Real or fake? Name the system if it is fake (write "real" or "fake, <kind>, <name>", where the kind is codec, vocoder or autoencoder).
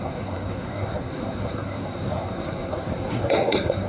fake, codec, SNAC